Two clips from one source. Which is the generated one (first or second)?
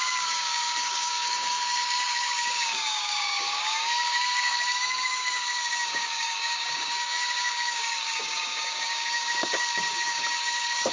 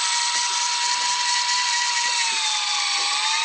first